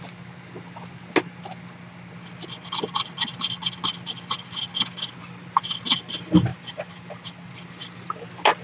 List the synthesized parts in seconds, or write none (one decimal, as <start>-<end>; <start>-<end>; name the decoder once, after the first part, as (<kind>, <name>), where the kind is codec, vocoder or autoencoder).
none